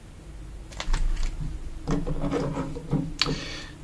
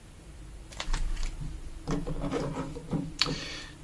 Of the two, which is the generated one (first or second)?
second